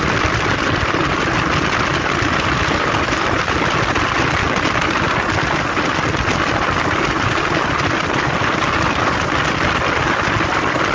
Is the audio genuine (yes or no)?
yes